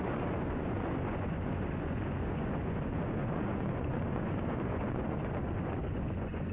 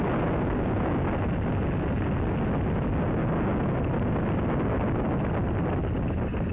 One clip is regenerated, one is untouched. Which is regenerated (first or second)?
first